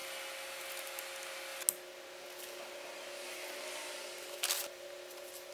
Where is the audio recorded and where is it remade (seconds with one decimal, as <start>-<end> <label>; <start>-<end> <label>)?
0.0-5.5 recorded